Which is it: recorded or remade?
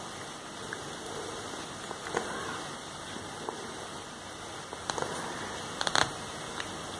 recorded